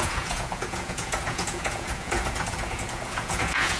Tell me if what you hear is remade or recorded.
remade